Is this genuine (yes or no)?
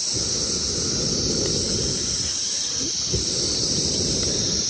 yes